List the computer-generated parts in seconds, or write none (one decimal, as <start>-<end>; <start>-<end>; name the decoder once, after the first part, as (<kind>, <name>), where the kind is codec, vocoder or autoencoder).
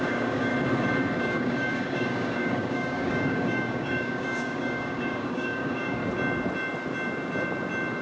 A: 0.0-0.5 (codec, DAC); 1.2-6.0